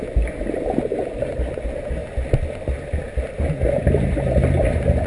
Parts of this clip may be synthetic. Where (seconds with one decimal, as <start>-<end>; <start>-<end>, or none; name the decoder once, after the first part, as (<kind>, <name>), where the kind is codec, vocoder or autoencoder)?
none